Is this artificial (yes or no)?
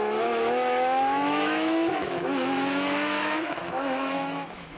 yes